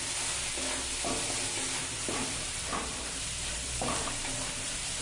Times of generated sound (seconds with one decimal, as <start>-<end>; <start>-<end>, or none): 1.8-5.0